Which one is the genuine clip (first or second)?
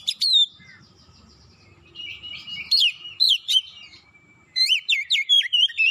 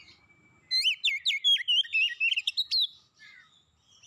second